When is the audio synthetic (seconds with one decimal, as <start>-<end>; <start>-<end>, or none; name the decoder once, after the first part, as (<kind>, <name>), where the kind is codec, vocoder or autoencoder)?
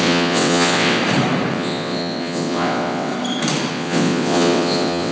0.0-1.0 (vocoder, WaveNeXt); 1.5-3.1; 3.7-5.1